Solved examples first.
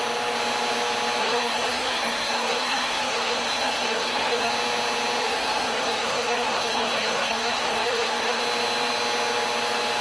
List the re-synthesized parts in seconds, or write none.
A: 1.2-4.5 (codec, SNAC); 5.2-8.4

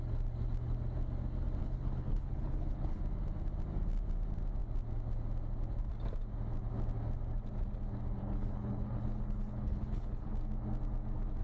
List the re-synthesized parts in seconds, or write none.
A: 1.6-3.0 (codec, HILCodec); 8.2-10.3

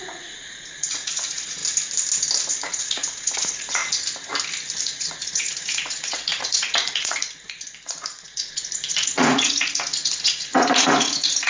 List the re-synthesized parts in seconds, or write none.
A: 0.0-1.6 (vocoder, Vocos); 2.5-3.8; 4.8-11.5

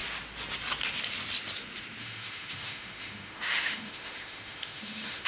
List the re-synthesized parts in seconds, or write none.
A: 2.0-5.3 (autoencoder, DAC-VAE)